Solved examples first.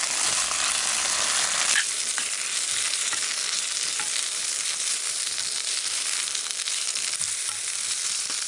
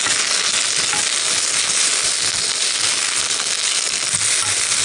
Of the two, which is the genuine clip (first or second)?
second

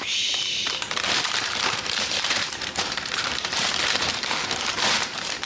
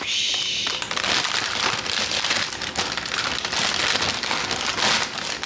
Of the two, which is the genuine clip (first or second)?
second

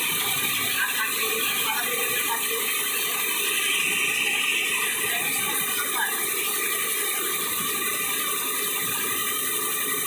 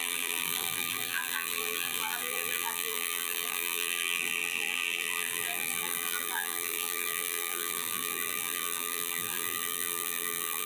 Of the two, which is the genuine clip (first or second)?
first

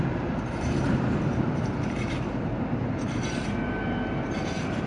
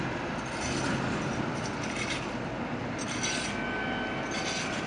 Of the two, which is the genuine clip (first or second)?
second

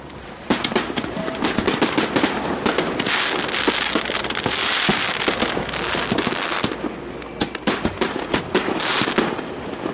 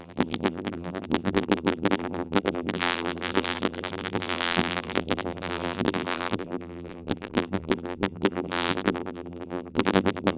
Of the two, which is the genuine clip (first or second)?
first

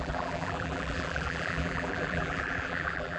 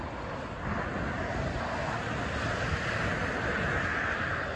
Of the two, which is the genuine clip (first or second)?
second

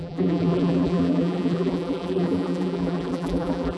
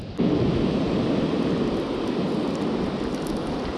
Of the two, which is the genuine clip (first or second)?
second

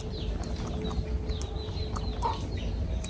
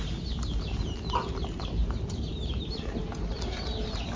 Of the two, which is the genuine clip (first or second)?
first